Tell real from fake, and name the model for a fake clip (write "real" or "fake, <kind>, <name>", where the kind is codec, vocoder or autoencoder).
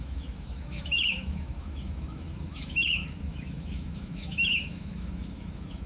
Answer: fake, autoencoder, DAC-VAE